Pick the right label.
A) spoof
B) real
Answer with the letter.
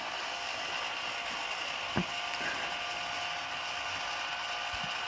B